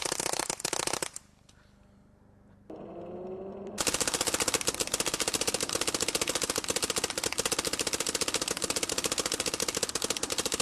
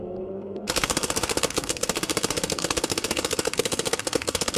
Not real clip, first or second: second